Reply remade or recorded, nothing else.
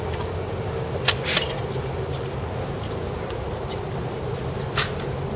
recorded